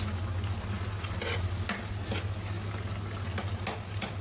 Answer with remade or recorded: recorded